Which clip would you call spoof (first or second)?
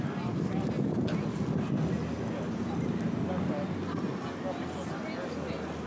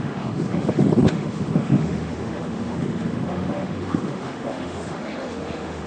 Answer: second